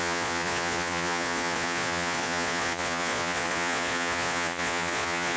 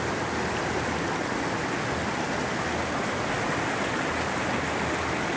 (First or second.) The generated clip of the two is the first